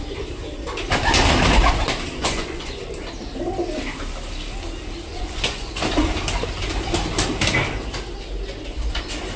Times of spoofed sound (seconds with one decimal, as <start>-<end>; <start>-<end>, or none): 2.2-2.8; 5.1-5.7

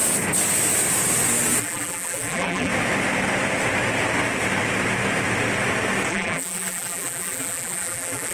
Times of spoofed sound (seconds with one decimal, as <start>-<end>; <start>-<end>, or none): 1.6-2.7; 6.1-8.3